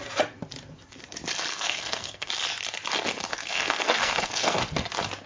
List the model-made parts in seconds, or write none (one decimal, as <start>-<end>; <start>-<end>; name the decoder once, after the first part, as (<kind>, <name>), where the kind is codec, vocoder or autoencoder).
1.5-2.3 (codec, SNAC); 3.3-4.6